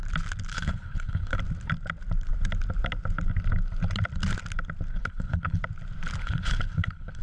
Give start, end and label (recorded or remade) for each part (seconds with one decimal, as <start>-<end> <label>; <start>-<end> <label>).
0.0-0.5 recorded; 0.5-1.4 remade; 1.4-4.9 recorded; 4.9-5.6 remade; 5.6-6.2 recorded; 6.2-7.2 remade